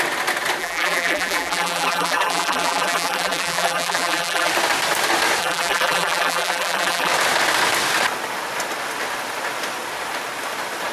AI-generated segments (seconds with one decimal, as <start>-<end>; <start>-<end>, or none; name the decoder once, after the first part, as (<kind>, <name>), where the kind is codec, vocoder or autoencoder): 0.6-4.5 (vocoder, BigVGAN v2); 5.4-7.1